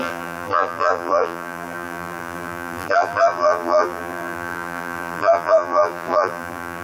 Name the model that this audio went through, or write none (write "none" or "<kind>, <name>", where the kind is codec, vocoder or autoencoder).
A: vocoder, BigVGAN v2